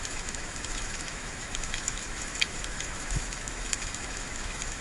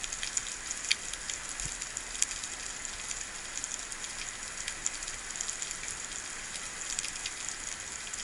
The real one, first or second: second